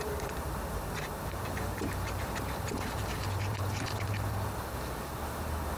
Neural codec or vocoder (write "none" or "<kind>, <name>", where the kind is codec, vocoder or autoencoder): vocoder, BigVGAN v2